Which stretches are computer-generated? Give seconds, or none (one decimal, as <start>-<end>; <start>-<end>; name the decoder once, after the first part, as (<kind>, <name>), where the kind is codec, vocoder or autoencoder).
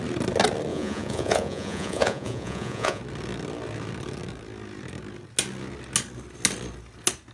0.7-3.0 (vocoder, Vocos)